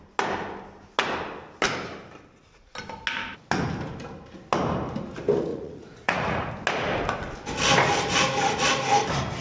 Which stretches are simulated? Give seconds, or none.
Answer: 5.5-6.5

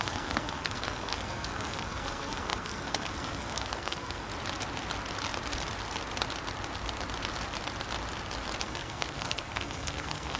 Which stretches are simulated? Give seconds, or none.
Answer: 0.0-4.3; 8.6-10.4

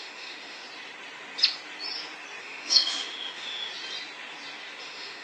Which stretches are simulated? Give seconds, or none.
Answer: 0.0-0.6; 2.4-3.7; 4.8-5.2